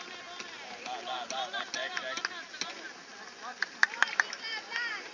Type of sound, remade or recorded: recorded